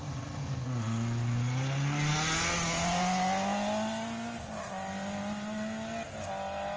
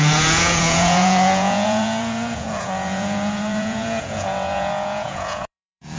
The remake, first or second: second